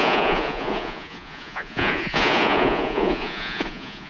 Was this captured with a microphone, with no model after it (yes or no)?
no